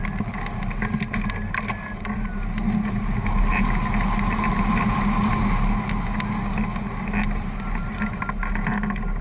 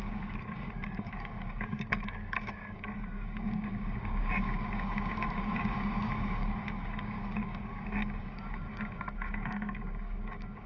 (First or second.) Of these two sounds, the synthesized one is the second